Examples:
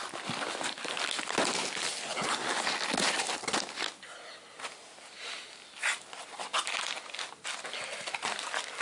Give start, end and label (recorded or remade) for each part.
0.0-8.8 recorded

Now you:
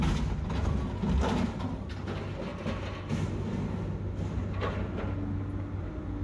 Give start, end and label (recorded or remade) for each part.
0.0-6.2 recorded

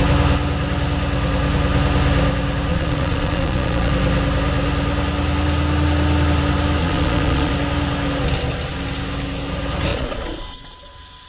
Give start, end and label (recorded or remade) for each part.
0.0-2.7 recorded; 2.7-3.9 remade; 3.9-6.8 recorded; 6.8-7.5 remade; 7.5-9.9 recorded; 9.9-10.4 remade; 10.4-11.3 recorded

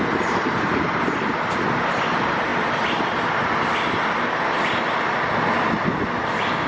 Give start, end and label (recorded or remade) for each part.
0.0-6.7 recorded

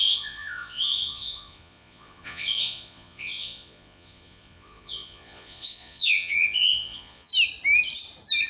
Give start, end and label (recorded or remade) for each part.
0.0-7.3 remade; 7.3-8.5 recorded

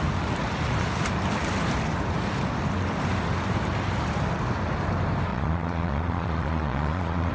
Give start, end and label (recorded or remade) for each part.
0.0-5.3 recorded; 5.3-7.3 remade

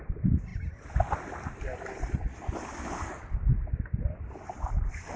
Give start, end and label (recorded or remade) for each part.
0.0-5.2 recorded

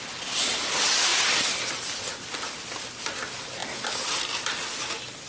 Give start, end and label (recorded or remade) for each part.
0.0-5.3 recorded